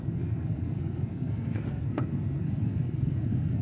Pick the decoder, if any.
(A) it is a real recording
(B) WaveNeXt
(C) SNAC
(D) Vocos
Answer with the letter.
C